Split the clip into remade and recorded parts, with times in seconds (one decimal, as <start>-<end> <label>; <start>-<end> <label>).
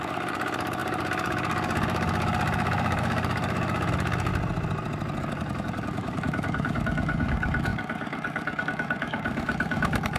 0.0-4.3 remade; 4.3-5.2 recorded; 5.2-10.2 remade